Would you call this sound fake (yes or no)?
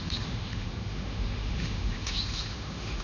yes